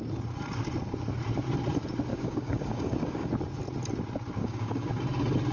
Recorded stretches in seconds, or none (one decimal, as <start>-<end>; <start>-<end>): 0.0-2.1; 3.3-4.4; 5.0-5.5